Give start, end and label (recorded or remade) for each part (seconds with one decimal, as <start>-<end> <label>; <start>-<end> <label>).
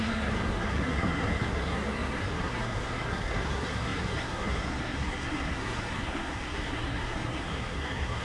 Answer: 0.0-8.2 remade